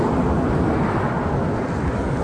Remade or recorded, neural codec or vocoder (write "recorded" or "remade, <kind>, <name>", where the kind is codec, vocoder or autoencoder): recorded